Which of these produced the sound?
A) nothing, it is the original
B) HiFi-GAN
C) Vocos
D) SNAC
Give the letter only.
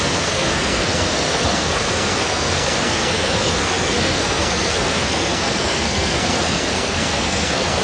D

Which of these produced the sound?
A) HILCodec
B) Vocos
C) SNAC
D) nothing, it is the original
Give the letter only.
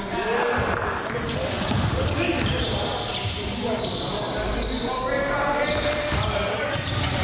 D